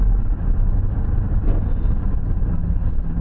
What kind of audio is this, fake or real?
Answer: real